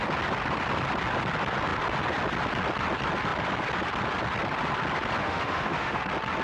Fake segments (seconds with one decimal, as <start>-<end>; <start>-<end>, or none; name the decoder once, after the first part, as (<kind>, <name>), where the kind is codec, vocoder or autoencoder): 5.2-6.0 (autoencoder, DAC-VAE)